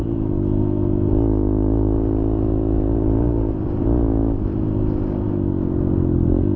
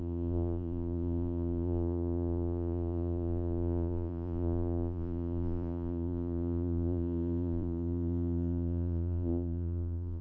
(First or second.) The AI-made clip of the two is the second